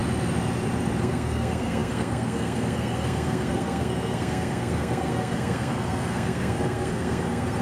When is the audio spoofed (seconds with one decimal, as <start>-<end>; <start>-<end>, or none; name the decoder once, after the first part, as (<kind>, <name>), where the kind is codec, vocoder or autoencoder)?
1.0-7.6 (codec, SNAC)